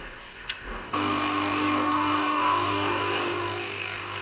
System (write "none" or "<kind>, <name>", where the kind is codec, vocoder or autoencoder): codec, DAC